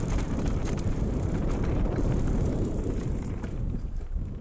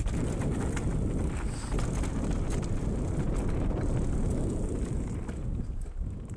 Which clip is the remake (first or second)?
first